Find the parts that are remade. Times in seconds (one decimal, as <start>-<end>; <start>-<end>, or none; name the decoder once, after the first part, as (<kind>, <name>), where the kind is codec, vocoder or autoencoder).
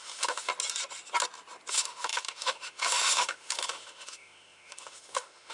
0.0-0.5 (autoencoder, DAC-VAE); 1.7-5.5